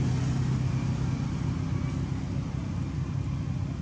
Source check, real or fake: real